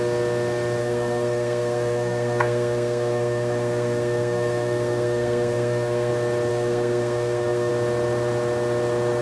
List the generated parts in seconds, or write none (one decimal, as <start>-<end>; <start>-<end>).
0.8-6.1; 6.5-7.7

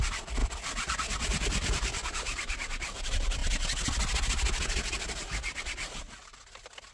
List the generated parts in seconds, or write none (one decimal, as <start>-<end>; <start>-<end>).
0.0-3.4; 5.6-6.9

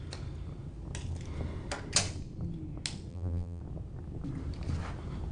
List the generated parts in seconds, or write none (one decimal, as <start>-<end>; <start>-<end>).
3.1-3.6

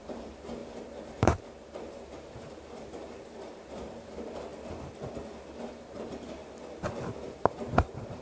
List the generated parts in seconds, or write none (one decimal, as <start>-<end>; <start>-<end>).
0.0-4.5; 5.7-6.4; 7.3-8.2